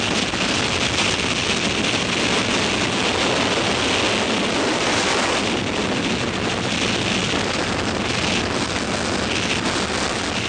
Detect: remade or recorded recorded